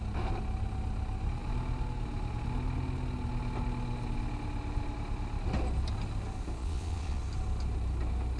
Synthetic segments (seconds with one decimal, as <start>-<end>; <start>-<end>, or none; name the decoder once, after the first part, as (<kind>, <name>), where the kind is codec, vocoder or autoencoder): 6.6-7.2 (vocoder, Vocos)